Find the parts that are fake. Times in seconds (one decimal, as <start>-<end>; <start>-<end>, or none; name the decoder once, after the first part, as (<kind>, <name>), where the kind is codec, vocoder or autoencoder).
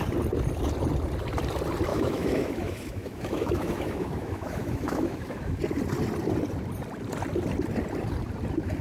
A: 1.9-5.6 (autoencoder, DAC-VAE)